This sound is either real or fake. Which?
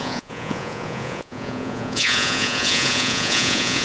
fake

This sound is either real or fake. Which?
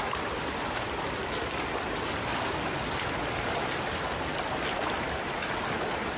real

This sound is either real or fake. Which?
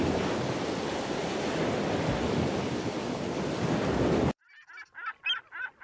real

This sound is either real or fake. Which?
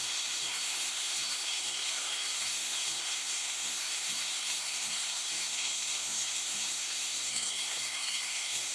fake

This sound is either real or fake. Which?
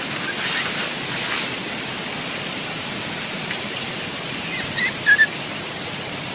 real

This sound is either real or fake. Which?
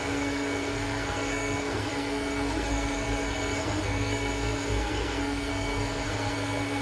fake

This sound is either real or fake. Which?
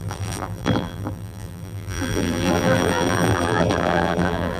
fake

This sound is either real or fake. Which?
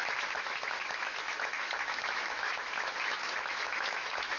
fake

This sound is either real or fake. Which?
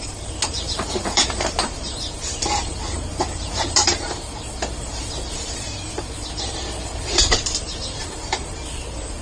fake